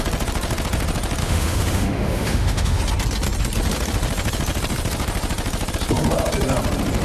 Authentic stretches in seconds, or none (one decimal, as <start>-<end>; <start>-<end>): 0.0-1.2; 2.8-7.0